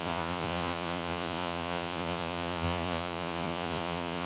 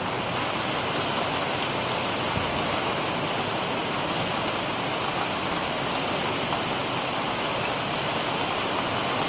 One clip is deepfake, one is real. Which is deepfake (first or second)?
first